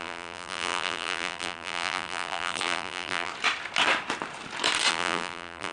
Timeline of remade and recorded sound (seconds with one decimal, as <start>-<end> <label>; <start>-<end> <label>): 0.0-3.3 remade; 3.3-4.9 recorded; 4.9-5.7 remade